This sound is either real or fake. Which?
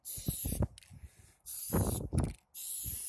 real